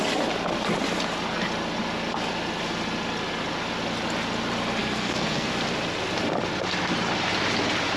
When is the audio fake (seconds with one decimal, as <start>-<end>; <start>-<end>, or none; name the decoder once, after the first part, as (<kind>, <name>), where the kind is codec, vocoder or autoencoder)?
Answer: 4.8-5.5 (codec, SNAC)